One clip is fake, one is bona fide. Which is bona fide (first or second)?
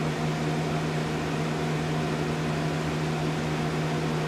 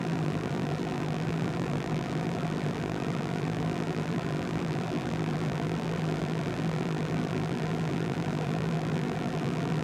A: first